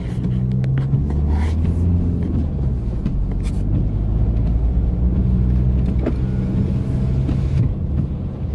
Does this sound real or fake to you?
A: real